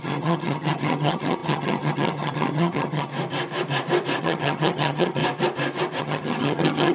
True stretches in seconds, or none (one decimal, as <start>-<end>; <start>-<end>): 3.1-4.2; 5.2-6.0